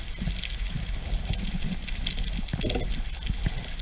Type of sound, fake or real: real